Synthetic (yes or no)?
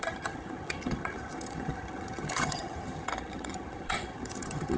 yes